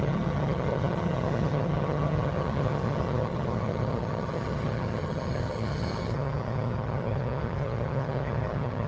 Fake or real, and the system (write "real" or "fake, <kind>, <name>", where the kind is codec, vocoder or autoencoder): fake, vocoder, HiFi-GAN